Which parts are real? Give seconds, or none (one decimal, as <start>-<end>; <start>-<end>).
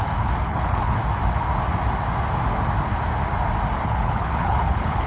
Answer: 1.0-3.8